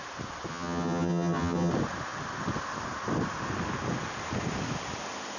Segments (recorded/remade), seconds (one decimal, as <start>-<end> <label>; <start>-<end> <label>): 0.0-0.5 recorded; 0.5-1.7 remade; 1.7-5.4 recorded